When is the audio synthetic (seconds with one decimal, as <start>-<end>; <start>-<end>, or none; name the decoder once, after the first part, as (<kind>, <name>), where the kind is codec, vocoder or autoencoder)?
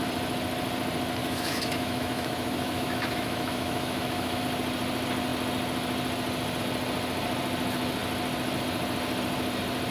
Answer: 1.2-4.4 (autoencoder, DAC-VAE)